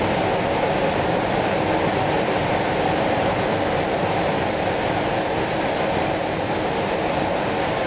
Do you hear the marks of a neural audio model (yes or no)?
no